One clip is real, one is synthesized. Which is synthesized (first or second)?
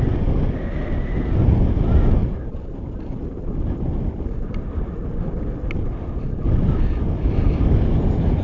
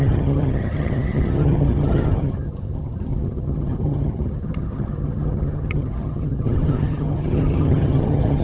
second